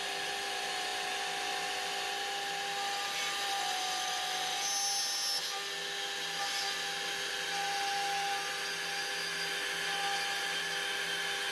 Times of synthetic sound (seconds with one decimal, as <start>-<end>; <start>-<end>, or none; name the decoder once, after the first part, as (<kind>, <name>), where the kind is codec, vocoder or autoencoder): none